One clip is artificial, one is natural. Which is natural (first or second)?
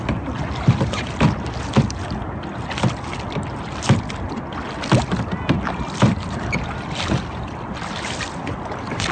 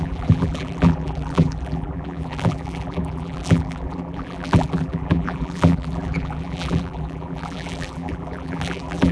first